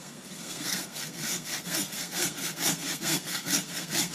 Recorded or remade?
remade